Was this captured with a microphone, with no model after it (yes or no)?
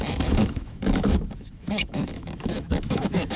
no